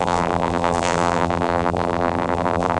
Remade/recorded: remade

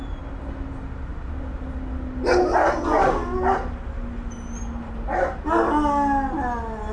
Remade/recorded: recorded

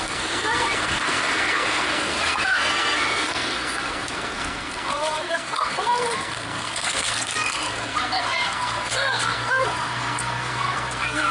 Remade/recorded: remade